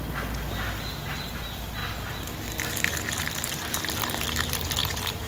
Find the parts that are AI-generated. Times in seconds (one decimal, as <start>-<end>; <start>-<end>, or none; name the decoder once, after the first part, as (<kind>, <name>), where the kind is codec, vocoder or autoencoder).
4.8-5.3 (vocoder, BigVGAN v2)